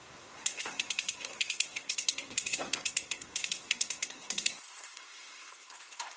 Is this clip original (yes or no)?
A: no